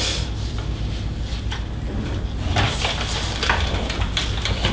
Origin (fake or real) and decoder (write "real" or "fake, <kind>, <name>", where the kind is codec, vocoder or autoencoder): real